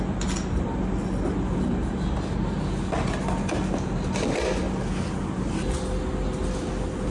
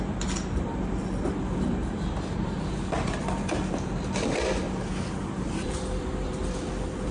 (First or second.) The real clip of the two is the first